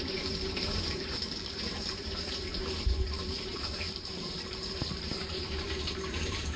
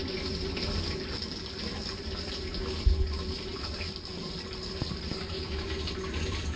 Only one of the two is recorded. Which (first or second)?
second